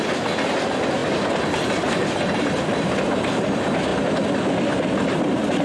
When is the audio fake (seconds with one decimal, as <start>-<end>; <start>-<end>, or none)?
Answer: none